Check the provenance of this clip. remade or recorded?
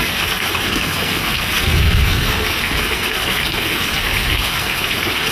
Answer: remade